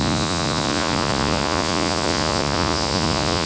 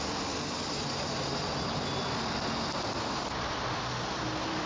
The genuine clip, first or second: second